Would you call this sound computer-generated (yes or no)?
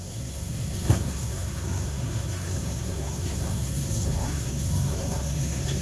yes